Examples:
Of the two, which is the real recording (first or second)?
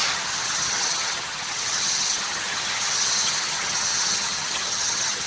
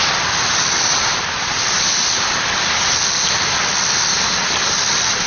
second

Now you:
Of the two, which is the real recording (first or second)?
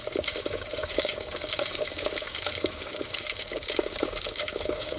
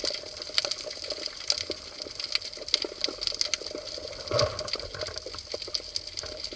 second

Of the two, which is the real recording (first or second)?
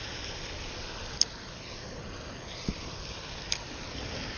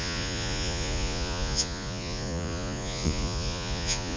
first